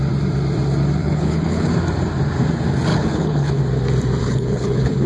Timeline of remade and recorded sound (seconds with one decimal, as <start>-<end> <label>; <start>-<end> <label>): 0.0-1.0 recorded; 1.0-1.7 remade; 1.7-2.9 recorded; 2.9-3.6 remade; 3.6-4.2 recorded; 4.2-5.1 remade